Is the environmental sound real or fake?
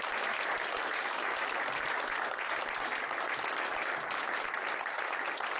real